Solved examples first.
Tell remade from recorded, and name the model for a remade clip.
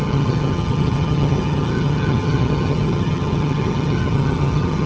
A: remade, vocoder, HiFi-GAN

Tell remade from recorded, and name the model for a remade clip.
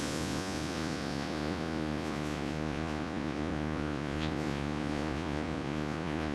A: remade, vocoder, Vocos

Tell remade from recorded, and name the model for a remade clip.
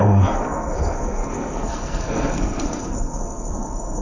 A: remade, codec, SNAC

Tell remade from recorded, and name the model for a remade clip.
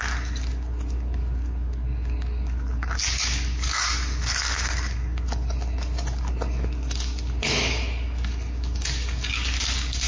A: remade, codec, DAC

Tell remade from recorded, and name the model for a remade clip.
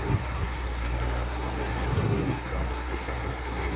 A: remade, codec, SNAC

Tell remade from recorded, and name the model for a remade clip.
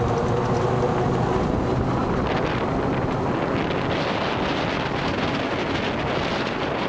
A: recorded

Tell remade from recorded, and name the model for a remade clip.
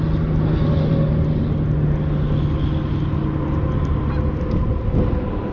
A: recorded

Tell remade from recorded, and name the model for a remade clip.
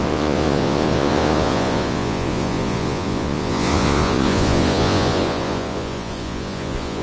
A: remade, vocoder, Vocos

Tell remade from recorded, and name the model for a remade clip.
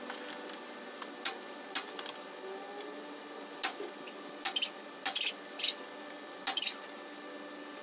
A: recorded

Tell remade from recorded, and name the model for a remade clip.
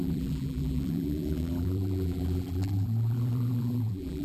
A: remade, vocoder, BigVGAN v2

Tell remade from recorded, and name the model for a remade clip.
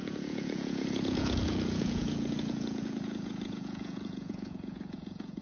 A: remade, vocoder, Vocos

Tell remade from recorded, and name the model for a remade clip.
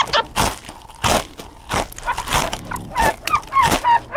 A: recorded